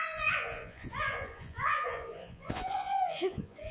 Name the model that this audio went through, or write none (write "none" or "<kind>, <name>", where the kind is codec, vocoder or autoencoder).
vocoder, Vocos